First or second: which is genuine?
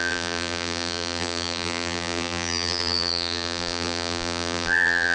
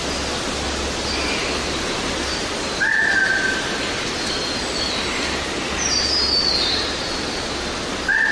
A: second